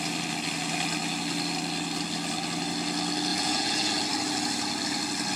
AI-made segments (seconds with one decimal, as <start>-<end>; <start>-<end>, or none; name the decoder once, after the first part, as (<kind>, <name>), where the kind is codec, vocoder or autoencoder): 3.3-3.9 (vocoder, Vocos)